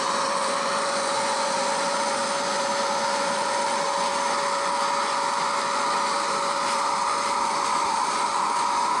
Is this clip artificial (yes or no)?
yes